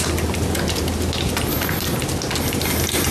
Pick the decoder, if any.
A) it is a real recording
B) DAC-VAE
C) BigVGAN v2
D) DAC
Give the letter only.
A